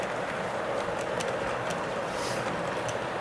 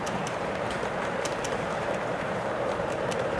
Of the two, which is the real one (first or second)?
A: first